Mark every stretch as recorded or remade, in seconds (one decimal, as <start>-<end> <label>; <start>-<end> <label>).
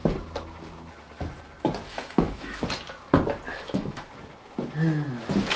0.0-1.9 recorded; 1.9-2.6 remade; 2.6-3.5 recorded; 3.5-4.1 remade; 4.1-5.6 recorded